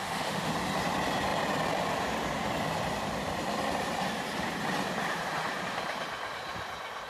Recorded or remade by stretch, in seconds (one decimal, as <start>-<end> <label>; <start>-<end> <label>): 0.0-0.5 remade; 0.5-7.1 recorded